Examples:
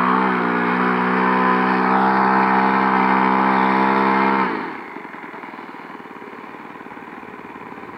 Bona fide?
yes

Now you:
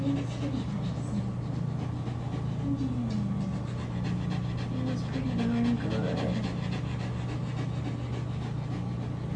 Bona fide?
yes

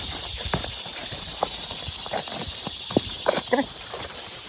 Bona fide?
no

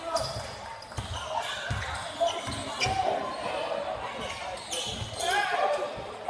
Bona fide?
yes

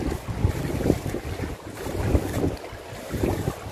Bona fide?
yes